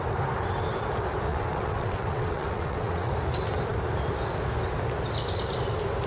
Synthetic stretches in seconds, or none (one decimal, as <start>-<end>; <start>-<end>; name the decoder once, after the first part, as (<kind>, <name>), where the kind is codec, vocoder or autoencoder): 1.3-3.1 (vocoder, WaveNeXt)